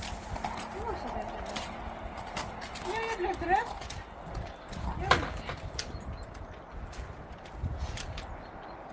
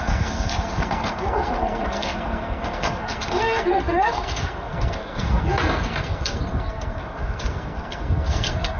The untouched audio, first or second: first